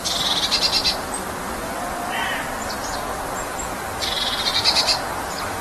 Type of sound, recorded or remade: remade